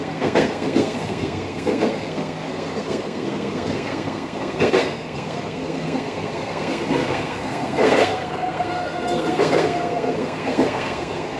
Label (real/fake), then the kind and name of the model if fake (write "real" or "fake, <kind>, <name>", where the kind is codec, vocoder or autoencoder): fake, codec, SNAC